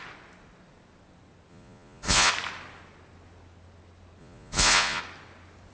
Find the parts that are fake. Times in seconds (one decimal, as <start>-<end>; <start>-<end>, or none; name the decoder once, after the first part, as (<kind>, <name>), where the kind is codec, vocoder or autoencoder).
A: 1.5-2.3 (vocoder, Vocos); 4.2-5.0